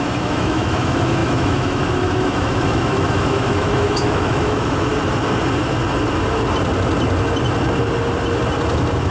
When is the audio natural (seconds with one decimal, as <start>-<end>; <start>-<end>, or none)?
4.9-8.7

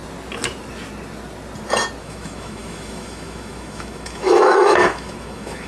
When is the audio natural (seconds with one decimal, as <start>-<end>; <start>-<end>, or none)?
0.0-2.0

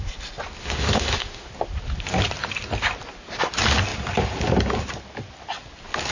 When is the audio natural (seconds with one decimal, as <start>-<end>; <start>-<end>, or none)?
0.0-0.6; 1.5-6.1

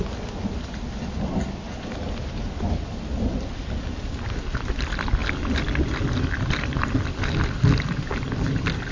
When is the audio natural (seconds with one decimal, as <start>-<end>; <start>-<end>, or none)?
0.0-8.9

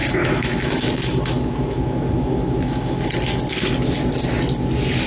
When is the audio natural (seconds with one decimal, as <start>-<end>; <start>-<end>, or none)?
3.1-5.1

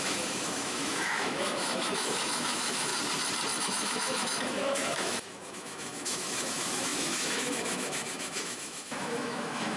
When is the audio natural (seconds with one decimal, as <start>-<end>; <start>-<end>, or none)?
2.9-3.6

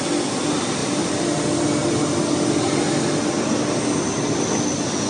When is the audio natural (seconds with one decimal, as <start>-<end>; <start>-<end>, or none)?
0.0-5.1